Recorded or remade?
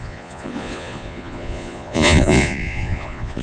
remade